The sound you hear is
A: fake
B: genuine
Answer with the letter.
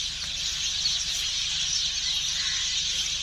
B